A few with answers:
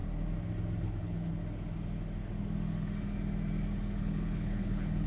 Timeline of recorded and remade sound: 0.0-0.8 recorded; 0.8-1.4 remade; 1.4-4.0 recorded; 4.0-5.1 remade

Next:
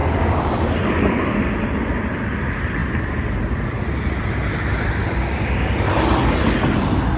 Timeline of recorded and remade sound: 0.0-0.5 remade; 0.5-5.0 recorded; 5.0-5.7 remade; 5.7-7.2 recorded

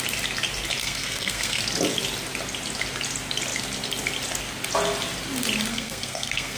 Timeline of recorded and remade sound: 0.0-0.8 recorded; 0.8-1.6 remade; 1.6-5.7 recorded; 5.7-6.6 remade

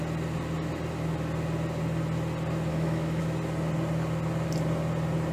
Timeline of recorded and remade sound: 0.0-2.7 recorded; 2.7-3.2 remade; 3.2-5.3 recorded